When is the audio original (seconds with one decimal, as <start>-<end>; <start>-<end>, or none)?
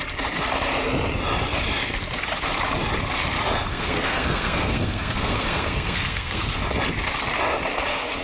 0.0-3.7; 6.6-8.2